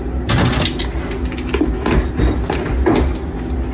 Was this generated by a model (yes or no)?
no